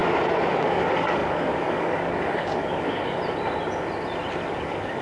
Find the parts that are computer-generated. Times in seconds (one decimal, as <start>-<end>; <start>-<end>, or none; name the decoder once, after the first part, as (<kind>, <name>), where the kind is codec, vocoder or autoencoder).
0.5-3.2 (codec, DAC); 4.5-5.0